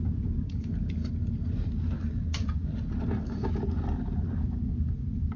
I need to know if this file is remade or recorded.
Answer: recorded